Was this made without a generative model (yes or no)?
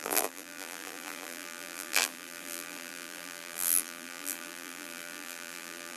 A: no